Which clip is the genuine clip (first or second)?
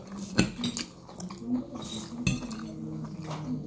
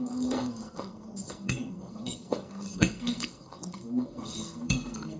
first